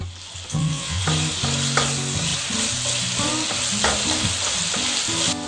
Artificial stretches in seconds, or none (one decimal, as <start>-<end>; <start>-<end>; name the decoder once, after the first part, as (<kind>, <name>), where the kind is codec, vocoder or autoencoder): 0.5-1.0 (vocoder, WaveNeXt)

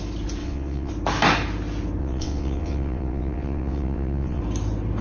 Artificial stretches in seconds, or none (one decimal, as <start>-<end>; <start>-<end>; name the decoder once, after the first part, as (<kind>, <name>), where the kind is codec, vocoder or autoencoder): 0.4-0.9 (vocoder, WaveNeXt); 2.0-4.4

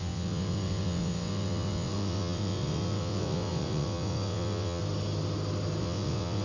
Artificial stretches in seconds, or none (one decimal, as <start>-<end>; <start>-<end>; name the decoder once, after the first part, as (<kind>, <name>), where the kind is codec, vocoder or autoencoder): 0.0-4.8 (vocoder, WaveNeXt); 5.8-6.4